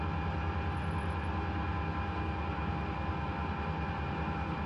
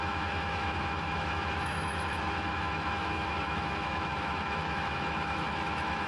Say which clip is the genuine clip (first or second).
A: first